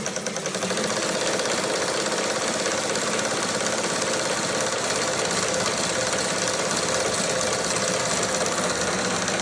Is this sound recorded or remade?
recorded